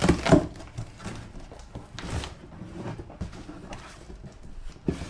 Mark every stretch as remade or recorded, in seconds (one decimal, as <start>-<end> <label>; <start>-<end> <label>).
0.0-5.1 recorded

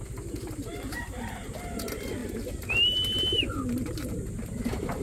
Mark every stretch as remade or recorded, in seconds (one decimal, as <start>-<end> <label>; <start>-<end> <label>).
0.0-0.7 recorded; 0.7-1.5 remade; 1.5-5.0 recorded

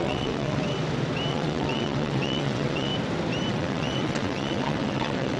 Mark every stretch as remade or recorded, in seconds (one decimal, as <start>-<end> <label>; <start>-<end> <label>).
0.0-0.6 remade; 0.6-1.3 recorded; 1.3-2.9 remade; 2.9-3.5 recorded; 3.5-5.4 remade

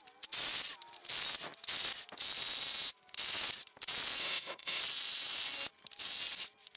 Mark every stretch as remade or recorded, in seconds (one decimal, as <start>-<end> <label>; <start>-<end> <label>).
0.0-4.2 recorded; 4.2-4.8 remade; 4.8-6.8 recorded

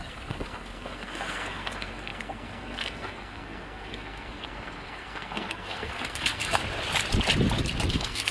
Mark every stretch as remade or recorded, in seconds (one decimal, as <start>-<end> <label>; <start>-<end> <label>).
0.0-6.6 remade; 6.6-7.9 recorded; 7.9-8.3 remade